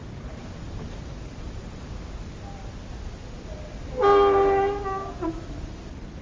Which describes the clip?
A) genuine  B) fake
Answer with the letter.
A